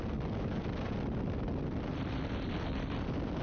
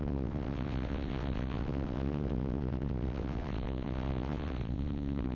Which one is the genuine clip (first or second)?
first